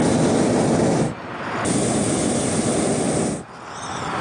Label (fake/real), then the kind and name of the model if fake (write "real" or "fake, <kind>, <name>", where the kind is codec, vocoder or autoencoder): real